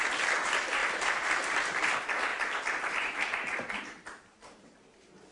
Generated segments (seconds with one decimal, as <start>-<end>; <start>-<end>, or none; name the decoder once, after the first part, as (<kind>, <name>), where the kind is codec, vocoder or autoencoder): 0.8-1.3 (vocoder, BigVGAN v2); 2.3-4.6